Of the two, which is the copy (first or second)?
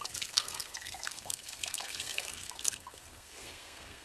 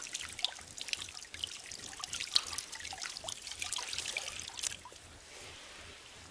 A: first